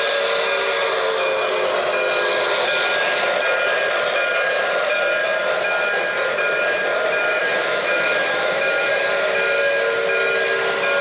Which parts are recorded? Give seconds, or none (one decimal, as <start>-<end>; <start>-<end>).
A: 0.0-7.4; 8.9-11.0